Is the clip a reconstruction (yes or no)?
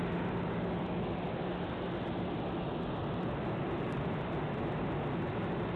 no